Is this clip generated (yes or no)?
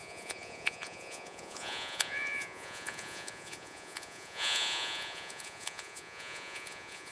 yes